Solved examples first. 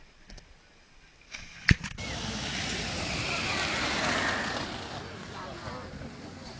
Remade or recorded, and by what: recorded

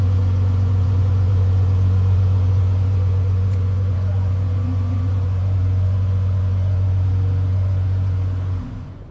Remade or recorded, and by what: remade, vocoder, Vocos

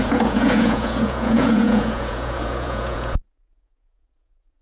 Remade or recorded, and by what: remade, vocoder, Vocos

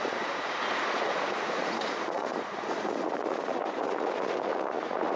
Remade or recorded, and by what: remade, vocoder, Vocos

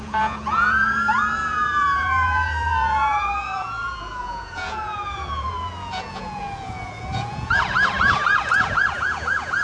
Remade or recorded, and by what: remade, vocoder, Vocos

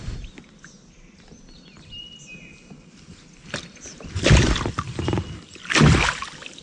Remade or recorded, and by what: recorded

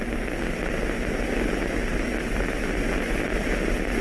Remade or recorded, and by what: recorded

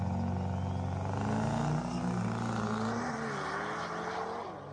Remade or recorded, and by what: recorded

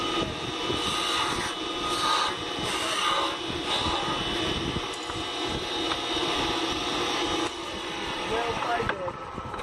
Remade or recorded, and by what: recorded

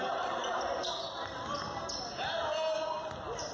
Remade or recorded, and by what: recorded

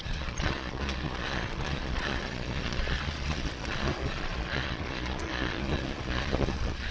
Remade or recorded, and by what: remade, vocoder, Vocos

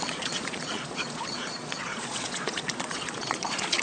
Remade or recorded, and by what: remade, vocoder, Vocos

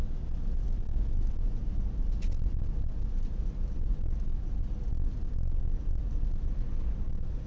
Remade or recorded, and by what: recorded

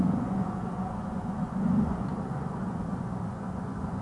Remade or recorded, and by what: remade, vocoder, Vocos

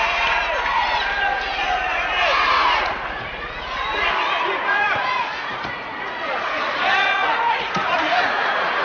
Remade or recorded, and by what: remade, vocoder, Vocos